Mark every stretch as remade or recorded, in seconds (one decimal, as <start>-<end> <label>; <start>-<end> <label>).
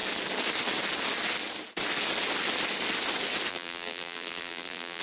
0.0-3.5 recorded; 3.5-5.0 remade